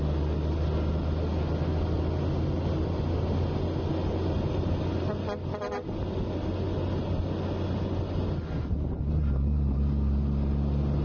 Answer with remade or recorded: recorded